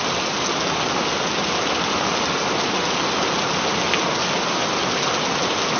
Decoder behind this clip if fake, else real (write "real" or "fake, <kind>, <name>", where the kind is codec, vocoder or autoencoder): real